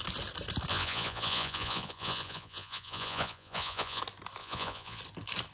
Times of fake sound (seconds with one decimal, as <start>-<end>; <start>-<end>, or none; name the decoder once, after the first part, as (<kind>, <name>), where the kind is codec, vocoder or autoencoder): 0.7-4.0 (vocoder, Vocos); 4.4-5.0